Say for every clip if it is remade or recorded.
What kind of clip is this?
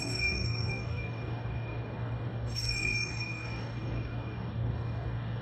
remade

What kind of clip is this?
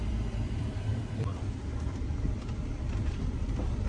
remade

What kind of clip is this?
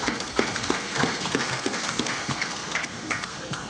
remade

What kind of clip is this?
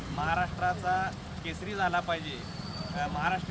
recorded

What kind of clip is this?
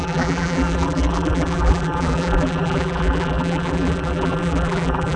remade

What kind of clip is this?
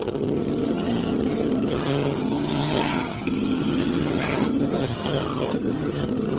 remade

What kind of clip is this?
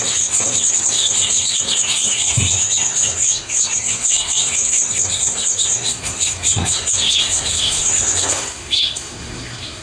remade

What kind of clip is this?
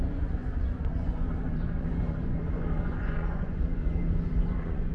remade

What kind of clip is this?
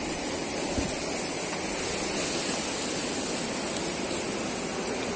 recorded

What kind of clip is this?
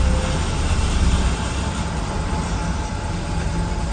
recorded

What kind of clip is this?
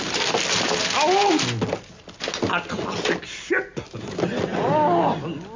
recorded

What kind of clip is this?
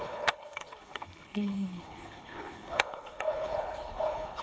remade